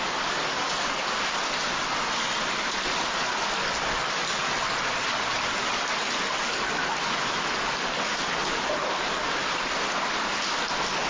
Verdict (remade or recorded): recorded